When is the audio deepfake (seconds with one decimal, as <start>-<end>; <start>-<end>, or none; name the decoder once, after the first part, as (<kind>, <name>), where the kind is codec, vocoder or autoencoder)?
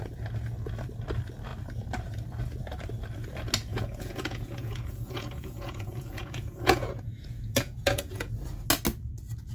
3.7-8.3 (vocoder, Vocos)